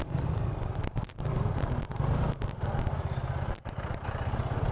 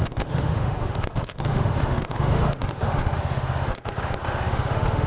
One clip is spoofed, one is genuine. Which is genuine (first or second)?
first